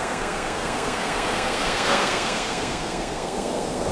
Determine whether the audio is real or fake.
fake